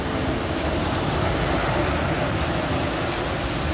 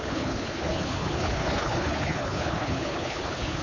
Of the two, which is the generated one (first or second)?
second